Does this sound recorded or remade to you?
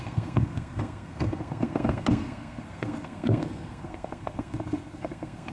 remade